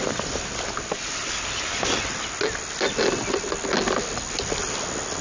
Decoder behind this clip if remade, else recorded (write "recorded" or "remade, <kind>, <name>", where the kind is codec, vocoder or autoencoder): recorded